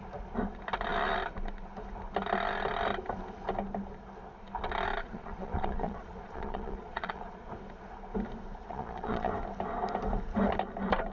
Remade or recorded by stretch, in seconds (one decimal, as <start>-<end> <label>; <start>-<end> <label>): 0.0-5.0 recorded; 5.0-7.5 remade; 7.5-8.6 recorded; 8.6-9.3 remade; 9.3-11.1 recorded